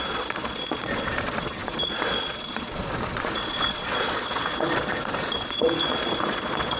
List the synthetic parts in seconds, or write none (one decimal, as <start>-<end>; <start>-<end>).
0.0-6.8